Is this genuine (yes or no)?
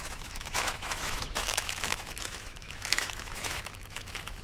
no